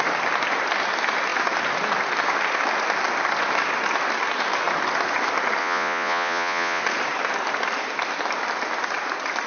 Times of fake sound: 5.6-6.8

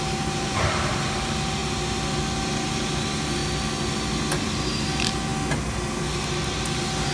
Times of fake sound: 0.0-1.6; 2.4-3.4; 4.4-5.3; 6.3-7.1

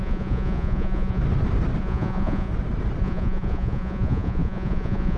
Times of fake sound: 0.0-1.2; 1.8-2.5; 3.0-5.2

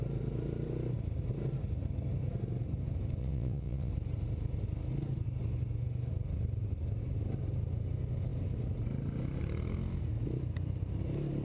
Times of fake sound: 3.2-3.9

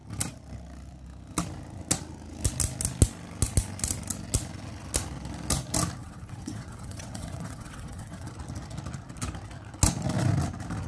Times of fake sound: 6.0-8.3

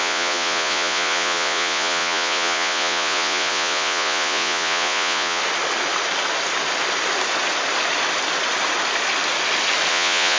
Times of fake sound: 0.0-5.4; 9.9-10.4